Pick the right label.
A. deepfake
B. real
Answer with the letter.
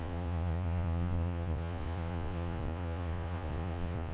A